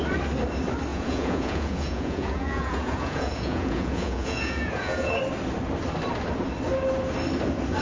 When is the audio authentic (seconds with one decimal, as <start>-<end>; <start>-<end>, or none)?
0.0-0.9; 5.2-7.8